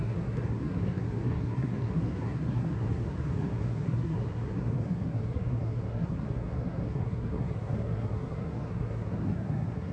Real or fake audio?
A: fake